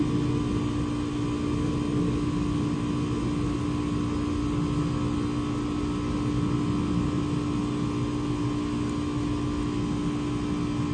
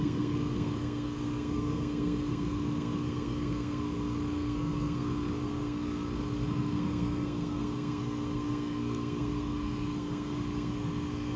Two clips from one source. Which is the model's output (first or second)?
second